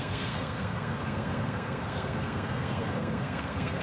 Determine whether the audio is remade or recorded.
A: remade